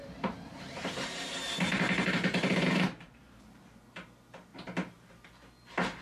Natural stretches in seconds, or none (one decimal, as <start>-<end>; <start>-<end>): 3.6-4.5; 5.1-6.0